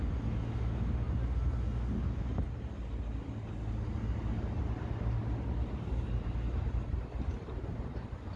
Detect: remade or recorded recorded